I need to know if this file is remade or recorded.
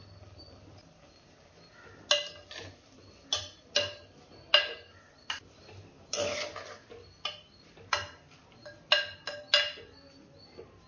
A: recorded